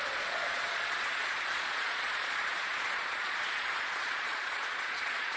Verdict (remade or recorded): remade